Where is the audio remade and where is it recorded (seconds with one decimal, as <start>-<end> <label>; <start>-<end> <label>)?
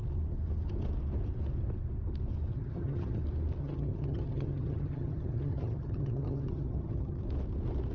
0.0-2.5 recorded; 2.5-3.2 remade; 3.2-3.6 recorded; 3.6-7.2 remade; 7.2-7.9 recorded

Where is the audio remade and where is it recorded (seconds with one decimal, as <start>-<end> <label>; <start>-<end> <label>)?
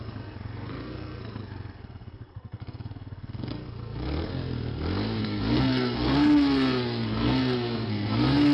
0.0-4.3 remade; 4.3-5.2 recorded; 5.2-8.5 remade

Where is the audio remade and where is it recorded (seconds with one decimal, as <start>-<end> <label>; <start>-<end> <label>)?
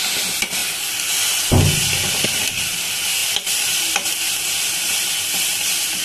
0.0-6.0 recorded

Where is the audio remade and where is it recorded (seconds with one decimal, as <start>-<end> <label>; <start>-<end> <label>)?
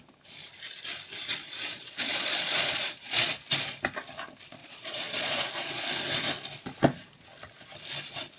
0.0-1.4 recorded; 1.4-3.3 remade; 3.3-4.6 recorded; 4.6-5.9 remade; 5.9-8.4 recorded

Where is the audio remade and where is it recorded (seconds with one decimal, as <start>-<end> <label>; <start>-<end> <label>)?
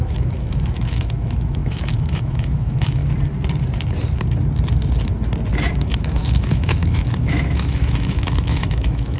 0.0-3.0 remade; 3.0-5.7 recorded; 5.7-9.2 remade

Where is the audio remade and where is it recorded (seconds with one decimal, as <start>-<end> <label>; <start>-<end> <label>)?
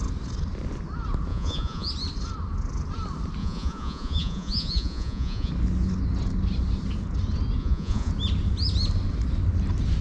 0.0-1.3 recorded; 1.3-1.9 remade; 1.9-3.4 recorded; 3.4-5.5 remade; 5.5-7.6 recorded; 7.6-8.1 remade; 8.1-10.0 recorded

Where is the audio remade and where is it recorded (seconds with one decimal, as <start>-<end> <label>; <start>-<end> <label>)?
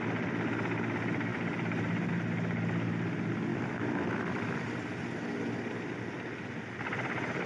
0.0-3.5 recorded; 3.5-4.2 remade; 4.2-7.5 recorded